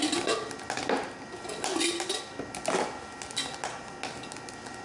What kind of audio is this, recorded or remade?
recorded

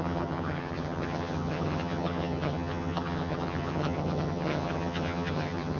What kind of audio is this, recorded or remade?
remade